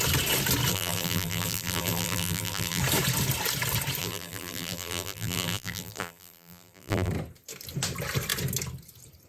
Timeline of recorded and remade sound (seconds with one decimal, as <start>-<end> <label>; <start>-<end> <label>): 0.0-0.7 recorded; 0.7-2.8 remade; 2.8-4.0 recorded; 4.0-7.1 remade; 7.1-9.3 recorded